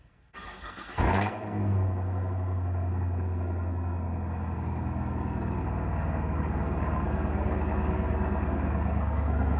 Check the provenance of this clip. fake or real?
fake